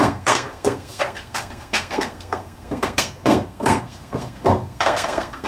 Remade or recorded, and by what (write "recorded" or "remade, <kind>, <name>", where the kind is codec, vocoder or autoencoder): remade, codec, SNAC